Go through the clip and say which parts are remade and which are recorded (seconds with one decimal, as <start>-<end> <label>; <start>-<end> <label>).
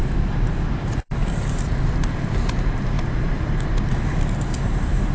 0.0-5.1 recorded